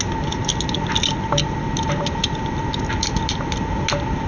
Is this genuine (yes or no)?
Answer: yes